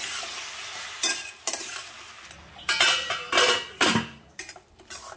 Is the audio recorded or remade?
recorded